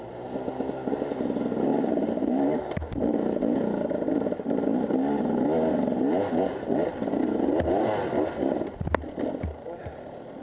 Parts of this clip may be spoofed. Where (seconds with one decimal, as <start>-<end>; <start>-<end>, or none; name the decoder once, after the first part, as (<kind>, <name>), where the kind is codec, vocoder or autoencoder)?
1.7-5.2 (vocoder, BigVGAN v2)